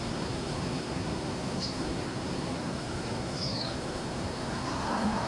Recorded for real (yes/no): no